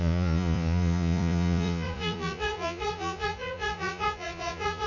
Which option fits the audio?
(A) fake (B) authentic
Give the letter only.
A